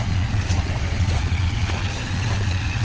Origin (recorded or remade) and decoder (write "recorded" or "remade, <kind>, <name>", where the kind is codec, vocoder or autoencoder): remade, vocoder, Vocos